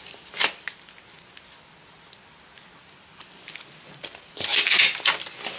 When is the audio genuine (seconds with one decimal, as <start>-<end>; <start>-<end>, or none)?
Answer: 0.0-5.6